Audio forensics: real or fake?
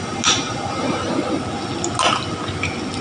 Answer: real